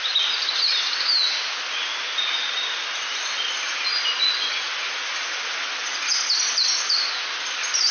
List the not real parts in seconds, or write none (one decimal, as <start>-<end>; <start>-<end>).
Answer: none